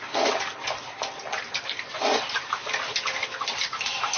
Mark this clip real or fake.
real